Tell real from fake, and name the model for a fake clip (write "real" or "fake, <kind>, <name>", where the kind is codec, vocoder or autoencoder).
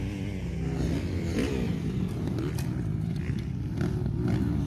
real